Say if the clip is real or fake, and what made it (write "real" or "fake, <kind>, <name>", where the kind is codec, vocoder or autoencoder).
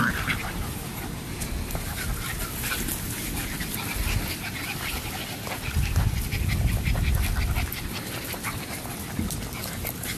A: real